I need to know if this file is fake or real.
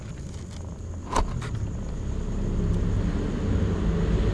real